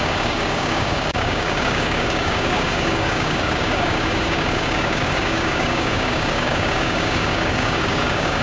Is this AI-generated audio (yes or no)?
yes